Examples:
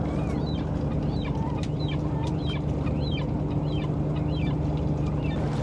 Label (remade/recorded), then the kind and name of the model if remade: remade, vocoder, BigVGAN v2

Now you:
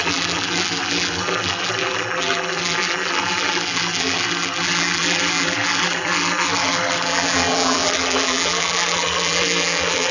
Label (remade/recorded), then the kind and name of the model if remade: remade, vocoder, BigVGAN v2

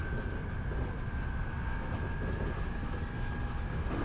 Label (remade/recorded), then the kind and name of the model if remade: recorded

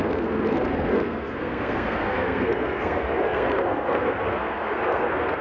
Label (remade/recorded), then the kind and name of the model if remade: remade, codec, SNAC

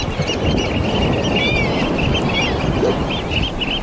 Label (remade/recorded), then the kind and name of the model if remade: recorded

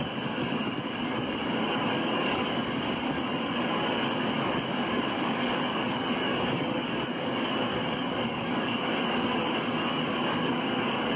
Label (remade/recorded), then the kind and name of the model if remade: remade, codec, DAC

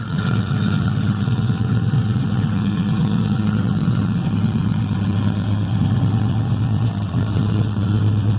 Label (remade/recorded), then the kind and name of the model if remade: remade, vocoder, WaveNeXt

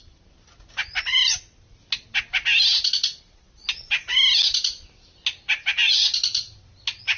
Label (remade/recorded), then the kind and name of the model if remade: recorded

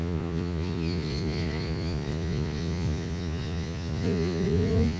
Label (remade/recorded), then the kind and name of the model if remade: remade, vocoder, Vocos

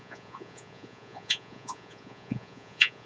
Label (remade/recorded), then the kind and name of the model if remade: remade, vocoder, Vocos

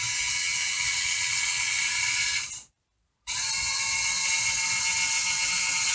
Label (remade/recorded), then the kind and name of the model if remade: recorded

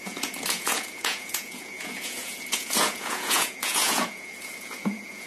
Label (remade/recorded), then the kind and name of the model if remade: remade, vocoder, Vocos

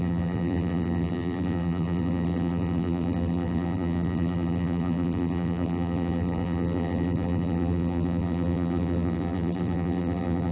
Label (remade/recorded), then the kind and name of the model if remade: remade, vocoder, BigVGAN v2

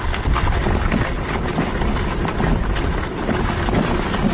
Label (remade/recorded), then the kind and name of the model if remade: recorded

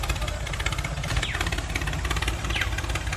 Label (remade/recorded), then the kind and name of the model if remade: recorded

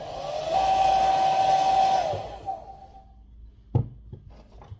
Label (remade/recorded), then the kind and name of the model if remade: recorded